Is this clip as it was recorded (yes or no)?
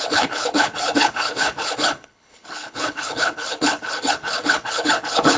no